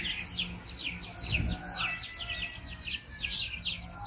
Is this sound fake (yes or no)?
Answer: no